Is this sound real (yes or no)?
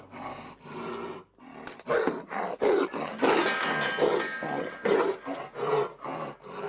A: yes